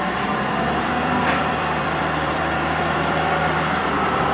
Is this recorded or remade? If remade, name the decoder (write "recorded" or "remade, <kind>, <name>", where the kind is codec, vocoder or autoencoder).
remade, vocoder, BigVGAN v2